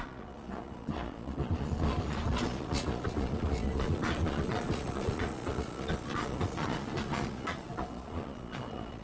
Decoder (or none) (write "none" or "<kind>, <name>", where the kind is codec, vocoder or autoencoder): vocoder, Vocos